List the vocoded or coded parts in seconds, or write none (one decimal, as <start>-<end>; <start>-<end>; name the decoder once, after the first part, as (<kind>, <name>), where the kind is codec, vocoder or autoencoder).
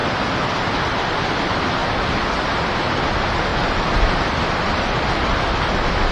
3.5-6.1 (vocoder, BigVGAN v2)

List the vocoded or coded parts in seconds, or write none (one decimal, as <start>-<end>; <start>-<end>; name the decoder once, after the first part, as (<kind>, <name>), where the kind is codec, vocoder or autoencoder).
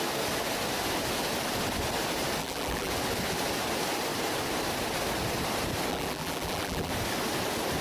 2.4-2.9 (vocoder, BigVGAN v2); 5.9-6.9